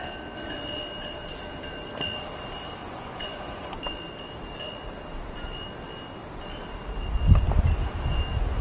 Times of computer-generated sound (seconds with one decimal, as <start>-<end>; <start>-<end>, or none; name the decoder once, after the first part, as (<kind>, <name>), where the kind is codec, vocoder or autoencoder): 2.8-3.7 (vocoder, Vocos)